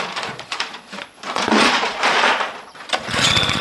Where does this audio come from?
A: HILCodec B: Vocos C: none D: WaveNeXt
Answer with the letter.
B